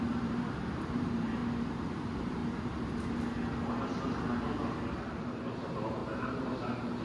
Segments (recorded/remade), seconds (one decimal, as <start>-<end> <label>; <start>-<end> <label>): 0.0-1.4 remade; 1.4-1.9 recorded; 1.9-2.4 remade; 2.4-5.3 recorded; 5.3-6.0 remade; 6.0-6.6 recorded; 6.6-7.0 remade